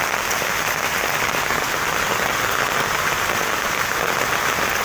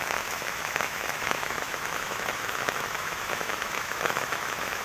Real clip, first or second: first